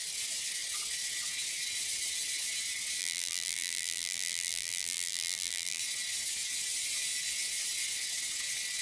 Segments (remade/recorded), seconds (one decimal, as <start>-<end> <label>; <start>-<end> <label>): 0.0-3.0 recorded; 3.0-5.8 remade; 5.8-8.8 recorded